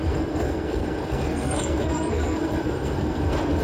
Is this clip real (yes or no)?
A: no